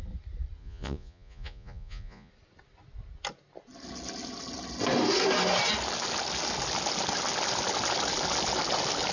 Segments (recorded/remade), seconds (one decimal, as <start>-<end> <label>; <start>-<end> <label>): 0.0-0.6 recorded; 0.6-2.3 remade; 2.3-9.1 recorded